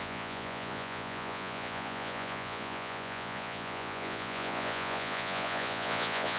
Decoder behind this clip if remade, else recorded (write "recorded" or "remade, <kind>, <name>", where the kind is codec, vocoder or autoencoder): remade, vocoder, Vocos